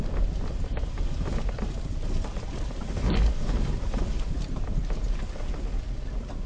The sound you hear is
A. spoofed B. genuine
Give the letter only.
B